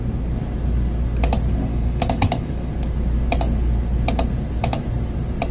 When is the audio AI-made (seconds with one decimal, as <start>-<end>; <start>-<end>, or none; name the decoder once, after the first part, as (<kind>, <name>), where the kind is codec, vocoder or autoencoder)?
1.7-2.7 (autoencoder, DAC-VAE)